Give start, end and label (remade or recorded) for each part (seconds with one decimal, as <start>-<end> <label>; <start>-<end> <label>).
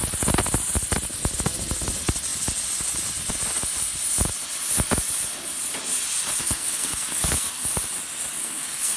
0.0-6.4 recorded; 6.4-7.6 remade; 7.6-8.4 recorded; 8.4-9.0 remade